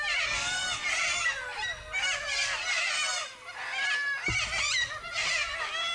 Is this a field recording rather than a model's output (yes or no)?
yes